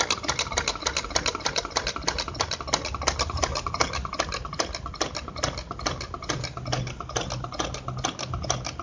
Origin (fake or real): real